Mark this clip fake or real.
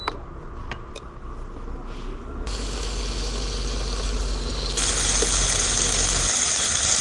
real